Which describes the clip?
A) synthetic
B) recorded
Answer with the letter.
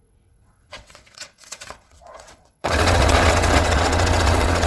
A